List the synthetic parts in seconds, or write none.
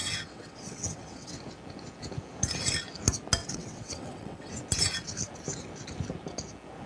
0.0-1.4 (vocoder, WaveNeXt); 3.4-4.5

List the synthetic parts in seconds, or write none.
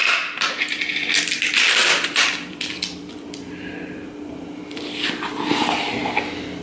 0.0-1.1 (vocoder, BigVGAN v2); 1.8-4.6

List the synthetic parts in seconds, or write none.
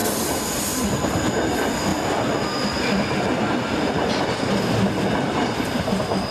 none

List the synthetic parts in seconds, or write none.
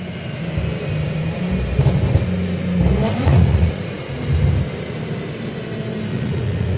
3.1-4.1 (vocoder, Vocos); 6.1-6.8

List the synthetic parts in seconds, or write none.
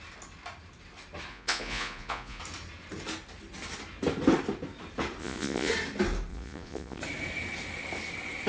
1.3-2.4 (vocoder, Vocos); 5.2-5.7; 6.3-7.0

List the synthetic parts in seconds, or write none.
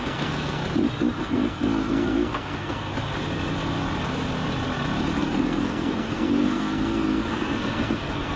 0.0-0.6 (codec, SNAC); 1.2-2.9; 5.2-8.4